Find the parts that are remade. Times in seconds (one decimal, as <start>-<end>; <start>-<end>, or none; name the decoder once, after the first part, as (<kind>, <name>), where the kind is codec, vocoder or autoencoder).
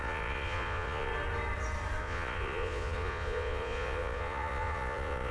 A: 0.0-1.1 (vocoder, Vocos); 2.0-5.3